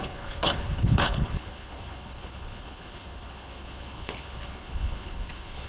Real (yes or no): no